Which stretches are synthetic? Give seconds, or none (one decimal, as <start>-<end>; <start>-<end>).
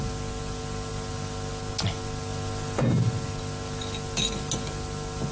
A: none